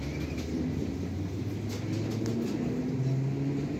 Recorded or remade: recorded